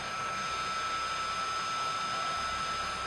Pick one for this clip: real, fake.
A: real